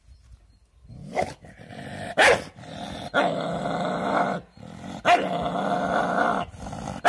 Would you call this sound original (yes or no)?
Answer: yes